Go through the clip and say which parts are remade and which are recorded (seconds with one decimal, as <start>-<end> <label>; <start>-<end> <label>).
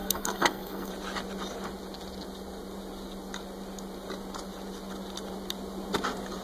0.0-0.9 remade; 0.9-6.4 recorded